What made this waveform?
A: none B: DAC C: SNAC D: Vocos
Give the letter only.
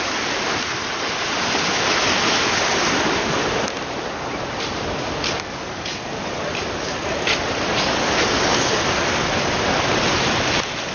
A